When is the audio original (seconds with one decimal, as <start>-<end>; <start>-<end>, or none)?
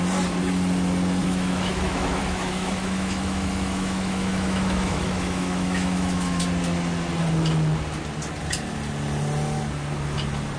0.0-1.2; 6.4-10.6